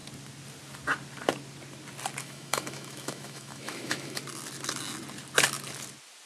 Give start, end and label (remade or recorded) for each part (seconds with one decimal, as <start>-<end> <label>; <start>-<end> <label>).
0.0-2.2 recorded; 2.2-4.2 remade; 4.2-6.3 recorded